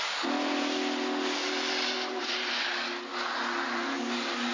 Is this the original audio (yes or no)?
yes